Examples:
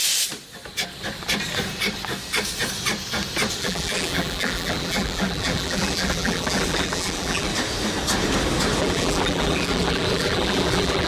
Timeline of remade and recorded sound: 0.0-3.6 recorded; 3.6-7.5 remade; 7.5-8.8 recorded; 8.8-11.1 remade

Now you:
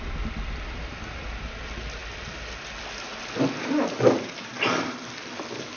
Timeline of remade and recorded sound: 0.0-5.8 recorded

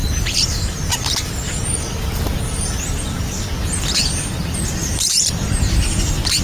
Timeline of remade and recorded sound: 0.0-3.8 recorded; 3.8-6.4 remade

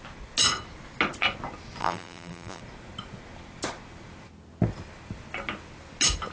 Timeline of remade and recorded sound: 0.0-1.8 recorded; 1.8-2.6 remade; 2.6-6.3 recorded

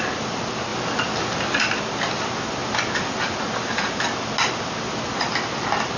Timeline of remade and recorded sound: 0.0-0.7 remade; 0.7-1.6 recorded; 1.6-2.6 remade; 2.6-5.4 recorded; 5.4-6.0 remade

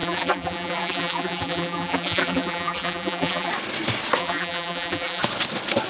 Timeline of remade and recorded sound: 0.0-3.5 remade; 3.5-4.2 recorded; 4.2-5.2 remade; 5.2-5.9 recorded

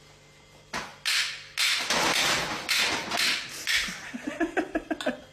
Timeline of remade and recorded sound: 0.0-5.3 recorded